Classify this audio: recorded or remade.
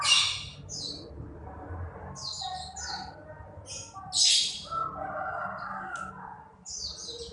recorded